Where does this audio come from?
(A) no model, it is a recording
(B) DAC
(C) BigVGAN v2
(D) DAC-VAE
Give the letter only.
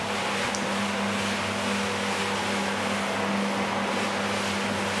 A